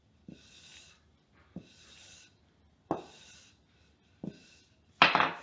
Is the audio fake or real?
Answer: real